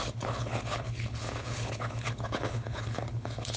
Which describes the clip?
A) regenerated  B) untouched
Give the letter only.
A